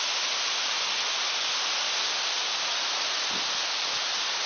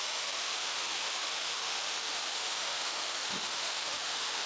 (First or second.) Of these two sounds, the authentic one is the first